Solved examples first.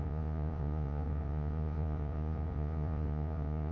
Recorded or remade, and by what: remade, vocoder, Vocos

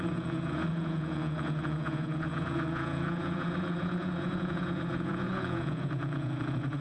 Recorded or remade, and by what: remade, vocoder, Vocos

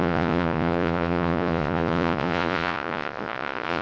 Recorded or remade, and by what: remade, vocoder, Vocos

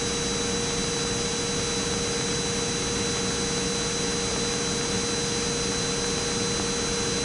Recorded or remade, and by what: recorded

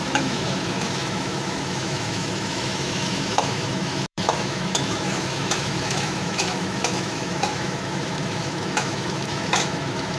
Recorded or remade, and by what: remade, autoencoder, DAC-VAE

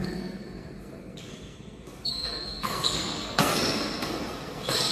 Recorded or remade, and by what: remade, codec, SNAC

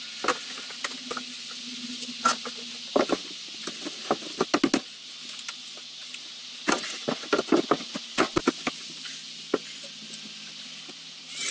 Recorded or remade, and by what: recorded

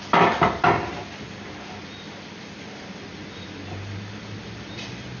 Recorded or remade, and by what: remade, vocoder, BigVGAN v2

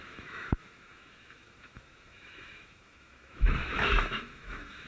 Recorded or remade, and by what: remade, autoencoder, DAC-VAE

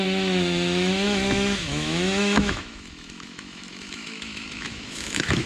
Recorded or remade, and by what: remade, autoencoder, DAC-VAE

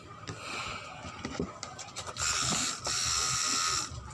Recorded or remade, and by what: recorded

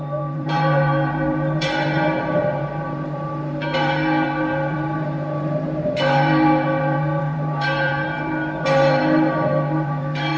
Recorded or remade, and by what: remade, vocoder, BigVGAN v2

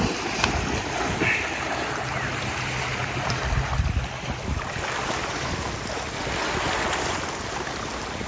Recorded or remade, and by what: recorded